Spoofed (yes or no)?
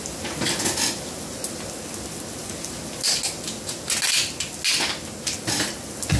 no